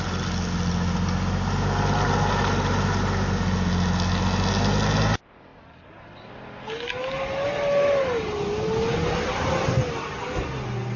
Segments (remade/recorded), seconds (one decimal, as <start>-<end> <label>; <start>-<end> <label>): 0.0-11.0 recorded